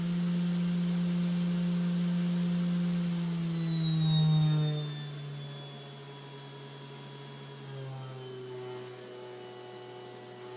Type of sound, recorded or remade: recorded